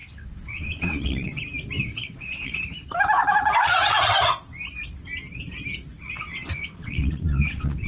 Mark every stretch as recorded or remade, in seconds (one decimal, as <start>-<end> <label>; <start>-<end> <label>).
0.0-1.4 remade; 1.4-1.9 recorded; 1.9-2.6 remade; 2.6-5.9 recorded; 5.9-7.9 remade